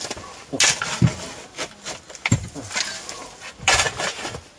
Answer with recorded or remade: recorded